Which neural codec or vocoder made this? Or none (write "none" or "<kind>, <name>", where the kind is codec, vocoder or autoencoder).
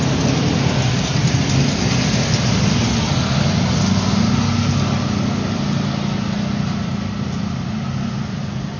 none